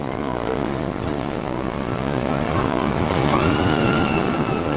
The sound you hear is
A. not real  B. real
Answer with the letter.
A